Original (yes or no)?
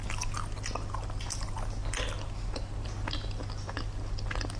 yes